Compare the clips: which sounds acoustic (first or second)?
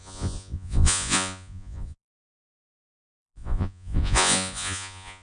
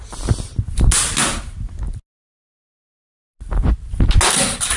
second